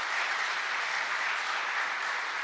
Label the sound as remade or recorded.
recorded